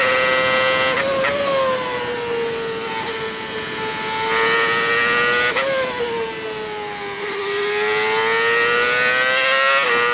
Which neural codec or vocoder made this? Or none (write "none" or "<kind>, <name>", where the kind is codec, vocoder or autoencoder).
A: none